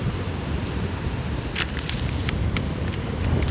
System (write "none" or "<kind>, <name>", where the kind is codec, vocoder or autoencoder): none